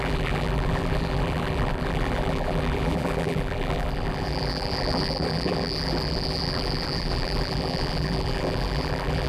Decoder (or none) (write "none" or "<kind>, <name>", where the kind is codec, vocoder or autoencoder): vocoder, BigVGAN v2